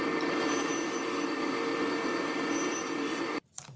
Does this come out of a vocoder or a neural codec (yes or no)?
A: yes